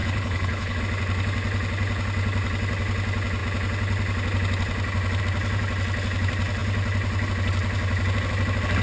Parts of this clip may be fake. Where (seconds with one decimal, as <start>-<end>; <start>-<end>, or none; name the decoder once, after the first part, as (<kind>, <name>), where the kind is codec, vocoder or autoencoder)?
0.0-0.8 (codec, HILCodec)